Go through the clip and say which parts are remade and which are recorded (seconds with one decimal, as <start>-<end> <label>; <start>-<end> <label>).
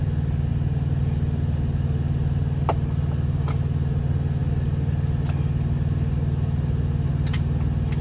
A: 0.0-8.0 recorded